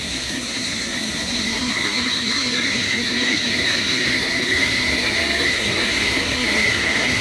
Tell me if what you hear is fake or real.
fake